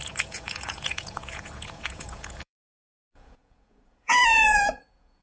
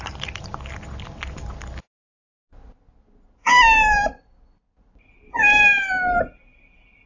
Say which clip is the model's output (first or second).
first